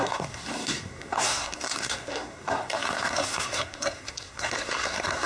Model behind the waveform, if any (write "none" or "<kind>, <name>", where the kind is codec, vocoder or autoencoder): codec, SNAC